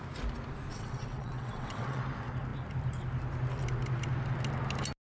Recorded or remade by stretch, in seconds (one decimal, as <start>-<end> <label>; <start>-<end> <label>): 0.0-0.7 recorded; 0.7-2.0 remade; 2.0-5.1 recorded